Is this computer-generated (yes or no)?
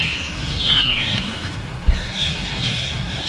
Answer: yes